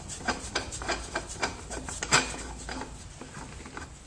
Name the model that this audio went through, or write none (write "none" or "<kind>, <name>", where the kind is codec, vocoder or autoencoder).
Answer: none